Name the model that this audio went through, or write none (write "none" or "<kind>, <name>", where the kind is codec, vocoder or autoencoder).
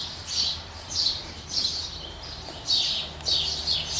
none